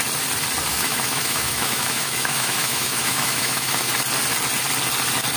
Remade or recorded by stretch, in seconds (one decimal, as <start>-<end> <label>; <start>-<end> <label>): 0.0-0.7 recorded; 0.7-3.9 remade; 3.9-5.4 recorded